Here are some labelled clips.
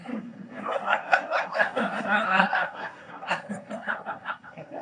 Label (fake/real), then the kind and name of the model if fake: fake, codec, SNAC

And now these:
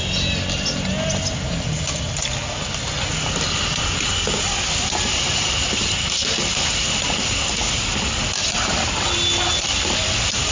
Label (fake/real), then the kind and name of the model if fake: real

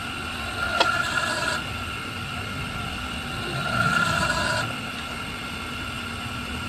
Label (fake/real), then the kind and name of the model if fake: real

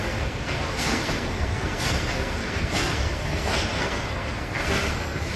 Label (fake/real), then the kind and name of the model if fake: fake, codec, SNAC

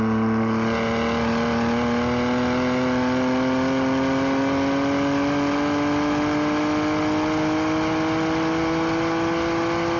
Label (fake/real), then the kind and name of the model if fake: real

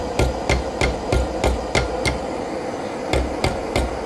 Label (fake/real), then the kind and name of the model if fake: real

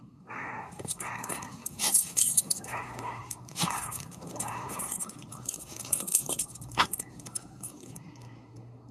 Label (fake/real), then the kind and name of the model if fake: fake, codec, SNAC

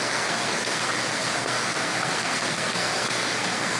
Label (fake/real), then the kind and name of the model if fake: fake, codec, SNAC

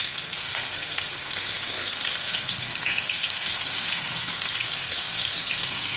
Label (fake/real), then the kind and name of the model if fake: fake, codec, SNAC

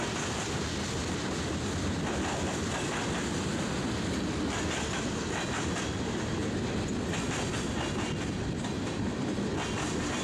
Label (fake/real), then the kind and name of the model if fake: real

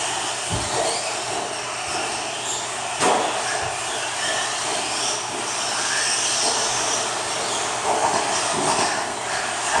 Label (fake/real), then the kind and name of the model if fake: real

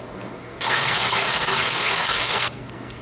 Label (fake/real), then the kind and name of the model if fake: fake, codec, SNAC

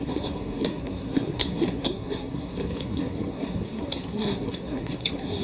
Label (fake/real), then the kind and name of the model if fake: fake, codec, SNAC